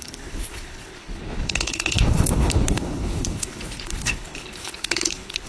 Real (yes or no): no